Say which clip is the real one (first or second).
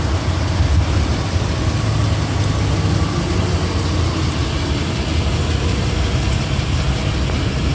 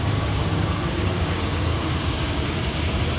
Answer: first